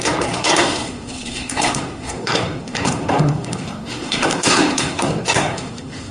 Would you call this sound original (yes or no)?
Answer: no